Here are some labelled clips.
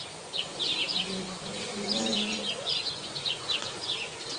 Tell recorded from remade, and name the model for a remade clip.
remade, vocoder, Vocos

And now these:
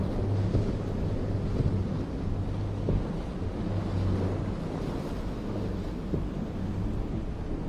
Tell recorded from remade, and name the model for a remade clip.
recorded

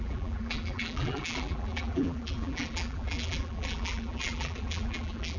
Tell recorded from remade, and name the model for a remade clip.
remade, vocoder, BigVGAN v2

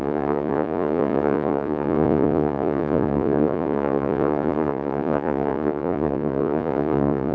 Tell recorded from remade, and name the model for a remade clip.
remade, vocoder, Vocos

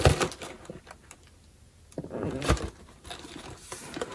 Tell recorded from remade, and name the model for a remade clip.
recorded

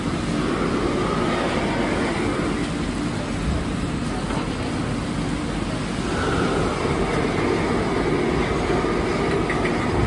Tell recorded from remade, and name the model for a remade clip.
recorded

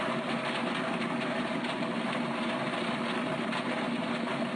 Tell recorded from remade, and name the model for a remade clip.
recorded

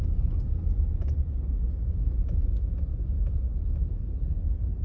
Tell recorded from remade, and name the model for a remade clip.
recorded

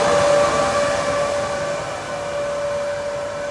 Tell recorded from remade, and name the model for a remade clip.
recorded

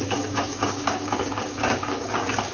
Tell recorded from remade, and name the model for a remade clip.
remade, codec, DAC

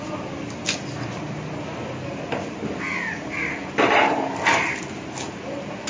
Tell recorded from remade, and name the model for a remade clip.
recorded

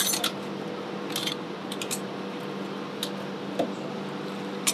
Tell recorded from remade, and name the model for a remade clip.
recorded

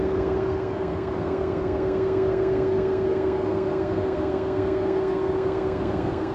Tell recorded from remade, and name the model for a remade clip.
remade, codec, SNAC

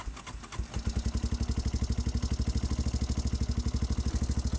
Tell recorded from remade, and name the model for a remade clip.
recorded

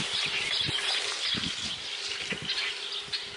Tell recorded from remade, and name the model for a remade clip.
recorded